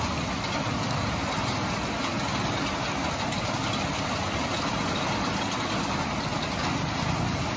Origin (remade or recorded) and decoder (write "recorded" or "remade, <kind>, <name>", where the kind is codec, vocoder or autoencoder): recorded